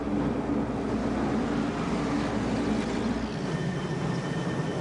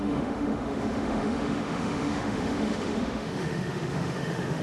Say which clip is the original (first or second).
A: first